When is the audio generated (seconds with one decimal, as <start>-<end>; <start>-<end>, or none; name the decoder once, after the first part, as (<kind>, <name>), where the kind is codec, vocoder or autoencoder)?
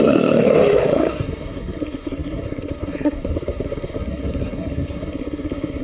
0.0-5.8 (codec, SNAC)